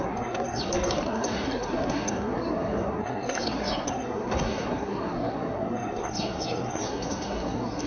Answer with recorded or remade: remade